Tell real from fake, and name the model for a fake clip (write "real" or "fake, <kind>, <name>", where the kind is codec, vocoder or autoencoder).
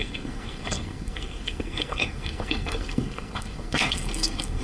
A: fake, codec, SNAC